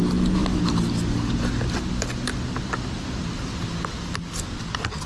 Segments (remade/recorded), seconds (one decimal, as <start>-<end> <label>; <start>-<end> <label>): 0.0-5.1 recorded